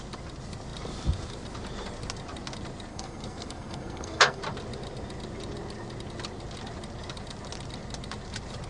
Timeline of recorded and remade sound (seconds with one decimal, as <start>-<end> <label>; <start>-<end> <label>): 0.0-2.9 recorded; 2.9-4.4 remade; 4.4-8.7 recorded